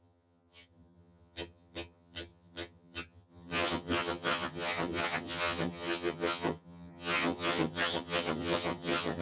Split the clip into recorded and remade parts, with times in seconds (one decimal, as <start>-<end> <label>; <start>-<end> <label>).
0.0-9.2 remade